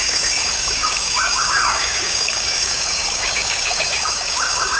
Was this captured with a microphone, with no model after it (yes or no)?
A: no